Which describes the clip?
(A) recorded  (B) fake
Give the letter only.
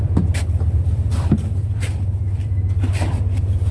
B